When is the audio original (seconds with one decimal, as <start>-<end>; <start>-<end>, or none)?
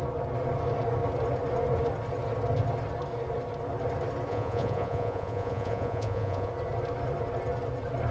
0.0-4.3; 6.5-8.1